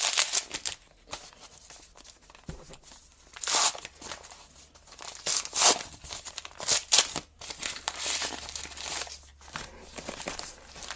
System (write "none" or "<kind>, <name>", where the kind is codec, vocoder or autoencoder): none